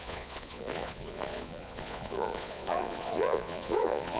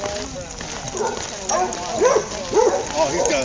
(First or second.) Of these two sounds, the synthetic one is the first